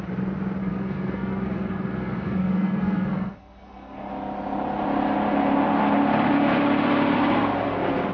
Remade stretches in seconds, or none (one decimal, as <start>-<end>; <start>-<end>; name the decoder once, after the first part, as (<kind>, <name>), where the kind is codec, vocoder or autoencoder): 0.6-4.1 (codec, SNAC)